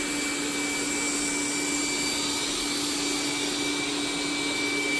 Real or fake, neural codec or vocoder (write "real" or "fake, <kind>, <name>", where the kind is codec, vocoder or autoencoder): real